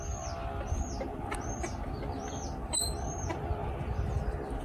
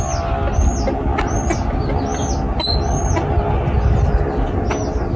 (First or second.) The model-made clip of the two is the first